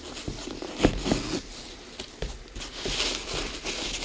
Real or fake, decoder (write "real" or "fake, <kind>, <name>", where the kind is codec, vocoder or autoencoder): real